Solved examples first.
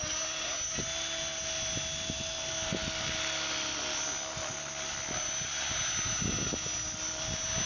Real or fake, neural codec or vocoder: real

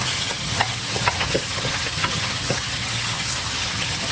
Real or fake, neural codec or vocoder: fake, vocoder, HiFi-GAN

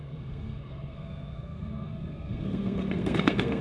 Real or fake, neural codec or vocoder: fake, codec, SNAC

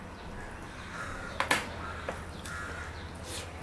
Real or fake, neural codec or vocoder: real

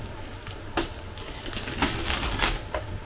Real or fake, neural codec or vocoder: real